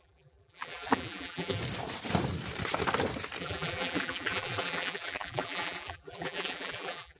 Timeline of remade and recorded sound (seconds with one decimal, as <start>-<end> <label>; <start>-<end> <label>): 0.0-1.6 remade; 1.6-3.4 recorded; 3.4-7.2 remade